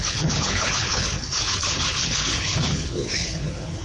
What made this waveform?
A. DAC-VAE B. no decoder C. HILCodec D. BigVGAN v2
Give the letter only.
C